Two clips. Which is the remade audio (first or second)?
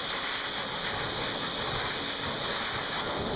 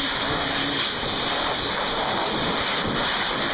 second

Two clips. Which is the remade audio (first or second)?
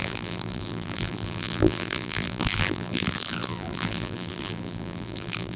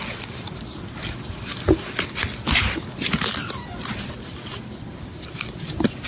first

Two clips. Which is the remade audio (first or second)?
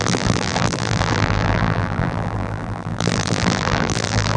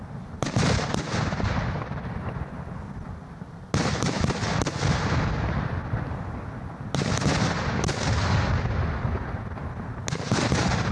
first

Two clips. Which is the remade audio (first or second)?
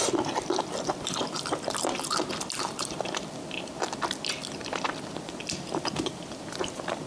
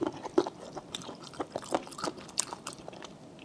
second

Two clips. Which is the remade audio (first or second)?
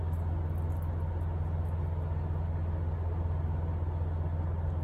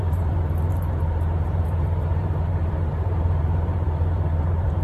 second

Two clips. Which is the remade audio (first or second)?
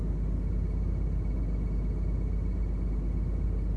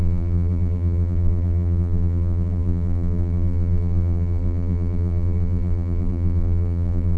second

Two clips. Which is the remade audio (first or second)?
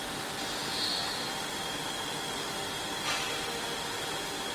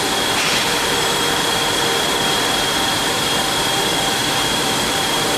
second